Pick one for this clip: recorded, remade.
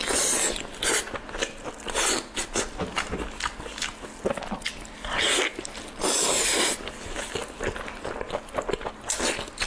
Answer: recorded